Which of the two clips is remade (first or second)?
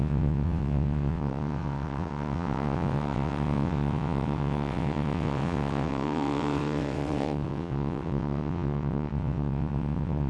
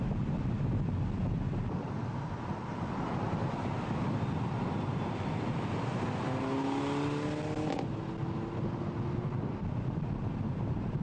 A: first